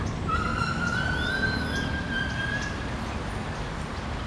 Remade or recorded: recorded